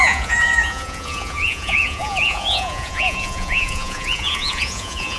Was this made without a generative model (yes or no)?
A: no